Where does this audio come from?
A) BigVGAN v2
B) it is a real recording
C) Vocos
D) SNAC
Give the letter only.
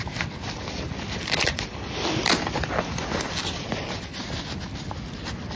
B